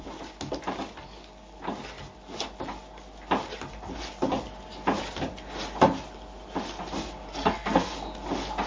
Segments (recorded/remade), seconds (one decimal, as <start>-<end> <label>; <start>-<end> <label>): 0.0-7.3 recorded; 7.3-7.9 remade; 7.9-8.7 recorded